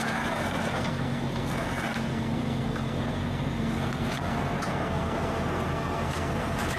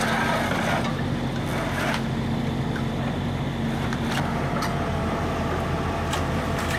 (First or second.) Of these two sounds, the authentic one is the second